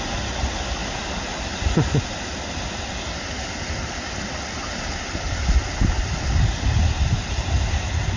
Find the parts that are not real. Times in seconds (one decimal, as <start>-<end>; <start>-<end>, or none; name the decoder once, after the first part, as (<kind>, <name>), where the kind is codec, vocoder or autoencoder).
none